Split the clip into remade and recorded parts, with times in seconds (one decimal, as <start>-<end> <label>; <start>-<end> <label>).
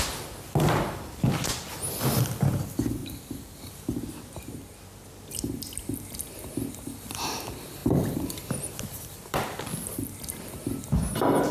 0.0-3.0 recorded; 3.0-4.1 remade; 4.1-7.8 recorded; 7.8-11.5 remade